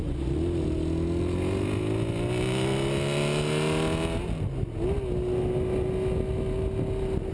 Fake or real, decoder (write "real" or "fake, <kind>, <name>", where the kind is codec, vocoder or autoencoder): real